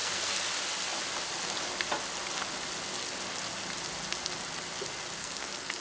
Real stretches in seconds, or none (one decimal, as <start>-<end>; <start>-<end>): 0.5-5.2